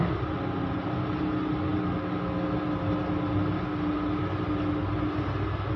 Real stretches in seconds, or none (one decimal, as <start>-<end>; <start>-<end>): 0.0-5.8